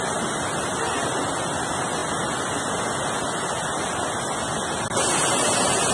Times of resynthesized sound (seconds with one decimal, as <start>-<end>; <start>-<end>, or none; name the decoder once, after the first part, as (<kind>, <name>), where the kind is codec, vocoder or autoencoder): none